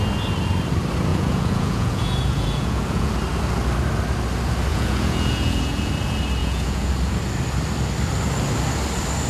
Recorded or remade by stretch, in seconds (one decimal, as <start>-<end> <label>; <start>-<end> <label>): 0.0-1.1 recorded; 1.1-3.1 remade; 3.1-4.7 recorded; 4.7-5.9 remade; 5.9-6.4 recorded; 6.4-6.9 remade; 6.9-9.3 recorded